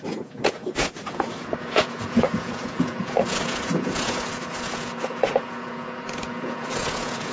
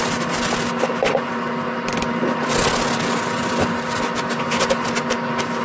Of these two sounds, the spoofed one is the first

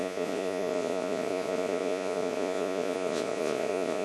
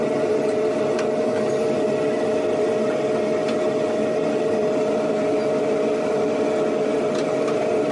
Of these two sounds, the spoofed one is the first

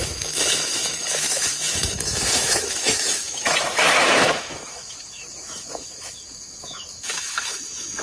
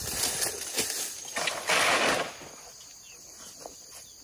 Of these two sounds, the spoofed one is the first